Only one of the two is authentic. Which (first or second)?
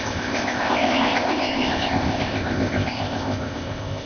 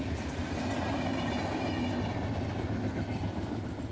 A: second